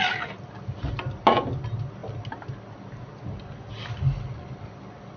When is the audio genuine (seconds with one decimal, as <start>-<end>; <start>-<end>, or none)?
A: 0.0-5.2